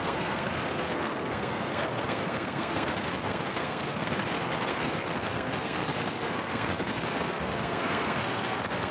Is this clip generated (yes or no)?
yes